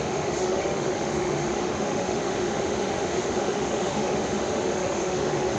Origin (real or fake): fake